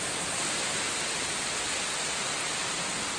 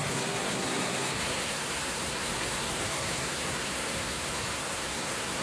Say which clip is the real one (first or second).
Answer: first